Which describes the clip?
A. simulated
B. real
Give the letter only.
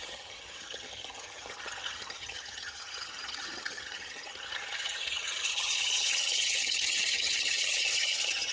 A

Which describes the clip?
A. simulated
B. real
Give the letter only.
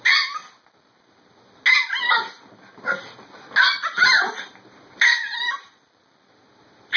B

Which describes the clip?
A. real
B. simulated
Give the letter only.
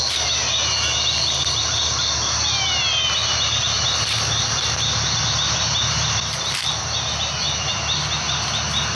A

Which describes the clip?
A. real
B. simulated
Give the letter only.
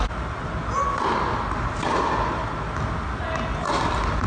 A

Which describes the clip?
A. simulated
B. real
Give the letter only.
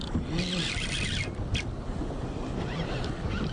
B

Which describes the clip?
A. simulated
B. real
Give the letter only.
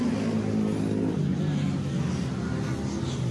B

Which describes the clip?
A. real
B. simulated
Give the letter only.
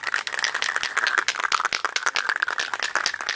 A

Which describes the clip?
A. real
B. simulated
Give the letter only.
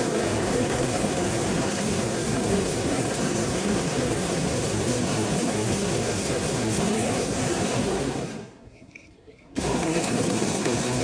B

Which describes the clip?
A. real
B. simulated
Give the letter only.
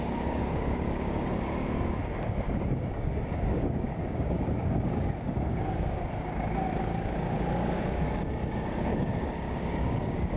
B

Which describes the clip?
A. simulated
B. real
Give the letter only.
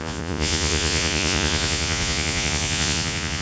A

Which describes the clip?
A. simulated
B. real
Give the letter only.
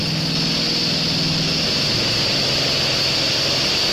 B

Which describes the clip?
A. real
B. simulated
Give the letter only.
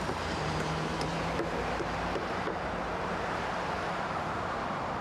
B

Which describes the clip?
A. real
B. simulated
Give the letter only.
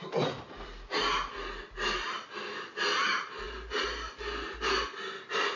A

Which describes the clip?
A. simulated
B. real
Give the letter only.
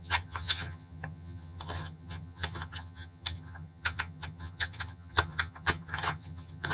A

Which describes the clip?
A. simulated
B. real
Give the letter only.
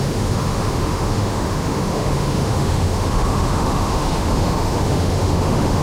A